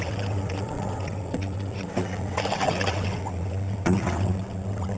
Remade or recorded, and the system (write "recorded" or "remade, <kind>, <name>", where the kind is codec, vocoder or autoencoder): remade, vocoder, WaveNeXt